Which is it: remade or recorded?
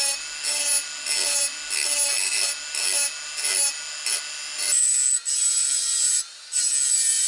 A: recorded